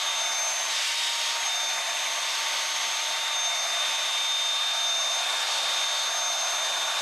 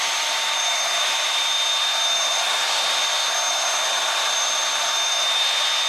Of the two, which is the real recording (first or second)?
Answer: first